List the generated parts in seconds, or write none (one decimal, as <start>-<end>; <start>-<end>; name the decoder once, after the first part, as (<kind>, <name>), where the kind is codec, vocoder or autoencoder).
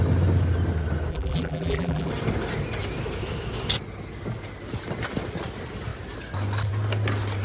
1.1-2.1 (vocoder, BigVGAN v2)